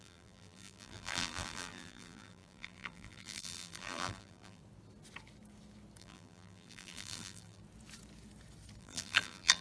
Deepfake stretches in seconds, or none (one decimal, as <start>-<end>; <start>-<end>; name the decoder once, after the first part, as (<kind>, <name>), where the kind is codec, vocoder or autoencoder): 0.0-4.6 (vocoder, BigVGAN v2); 6.0-7.6; 8.8-9.6